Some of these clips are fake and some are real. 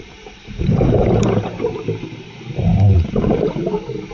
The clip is fake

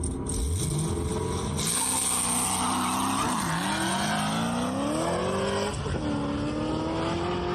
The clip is real